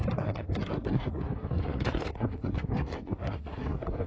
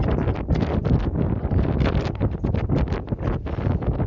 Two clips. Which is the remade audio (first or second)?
first